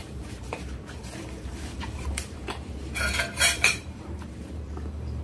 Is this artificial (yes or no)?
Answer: yes